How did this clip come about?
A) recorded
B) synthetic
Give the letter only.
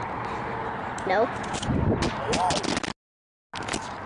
A